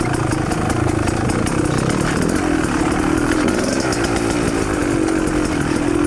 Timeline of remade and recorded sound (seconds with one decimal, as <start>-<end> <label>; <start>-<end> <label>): 0.0-6.1 recorded